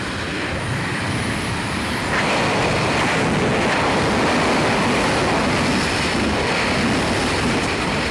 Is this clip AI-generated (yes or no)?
no